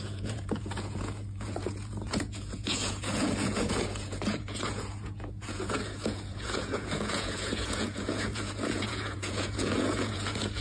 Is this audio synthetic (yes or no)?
yes